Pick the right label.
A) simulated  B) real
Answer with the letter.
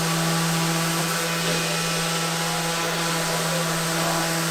B